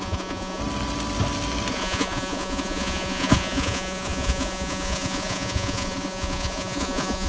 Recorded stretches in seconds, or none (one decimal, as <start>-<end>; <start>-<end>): 0.6-1.7